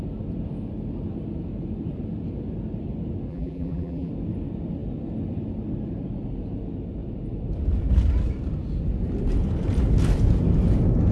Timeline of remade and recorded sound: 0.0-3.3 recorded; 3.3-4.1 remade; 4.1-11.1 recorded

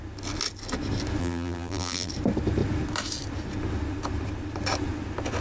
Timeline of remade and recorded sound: 0.0-1.2 recorded; 1.2-2.1 remade; 2.1-5.4 recorded

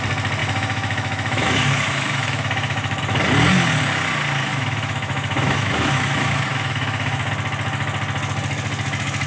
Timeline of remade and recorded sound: 0.0-0.4 recorded; 0.4-3.0 remade; 3.0-4.5 recorded; 4.5-7.3 remade; 7.3-9.3 recorded

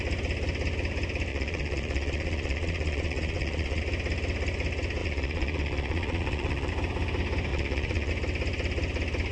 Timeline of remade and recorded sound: 0.0-1.3 recorded; 1.3-3.8 remade; 3.8-5.0 recorded; 5.0-6.7 remade; 6.7-7.5 recorded; 7.5-8.1 remade; 8.1-9.3 recorded

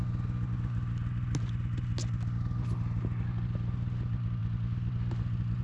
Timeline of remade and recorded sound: 0.0-5.6 recorded

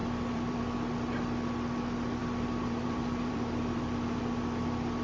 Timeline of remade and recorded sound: 0.0-0.6 remade; 0.6-2.2 recorded; 2.2-4.2 remade; 4.2-5.0 recorded